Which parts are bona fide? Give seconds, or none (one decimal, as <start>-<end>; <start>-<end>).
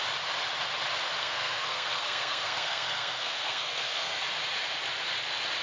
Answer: 0.0-1.2; 4.2-5.6